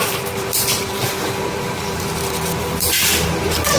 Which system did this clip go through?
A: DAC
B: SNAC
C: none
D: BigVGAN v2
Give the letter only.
D